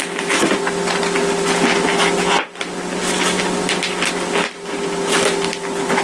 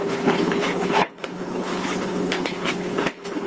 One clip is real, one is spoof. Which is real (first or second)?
first